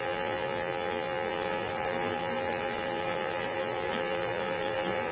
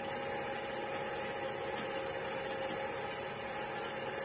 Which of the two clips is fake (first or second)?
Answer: first